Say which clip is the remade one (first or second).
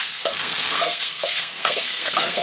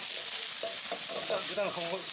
first